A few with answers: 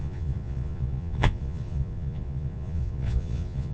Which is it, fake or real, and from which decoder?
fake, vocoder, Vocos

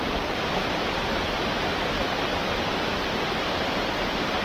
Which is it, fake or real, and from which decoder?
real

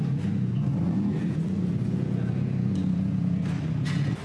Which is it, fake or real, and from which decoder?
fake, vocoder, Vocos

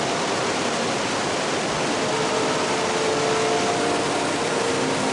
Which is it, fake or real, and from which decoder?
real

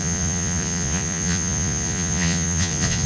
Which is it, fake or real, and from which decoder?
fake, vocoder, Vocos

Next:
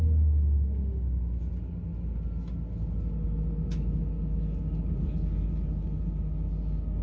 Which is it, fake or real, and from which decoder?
real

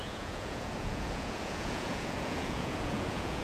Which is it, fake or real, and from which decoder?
fake, vocoder, Vocos